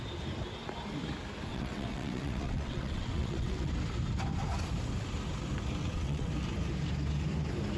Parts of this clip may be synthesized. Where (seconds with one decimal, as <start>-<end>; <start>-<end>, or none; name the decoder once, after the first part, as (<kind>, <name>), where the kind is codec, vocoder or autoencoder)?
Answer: 1.5-3.7 (vocoder, WaveNeXt); 5.8-6.3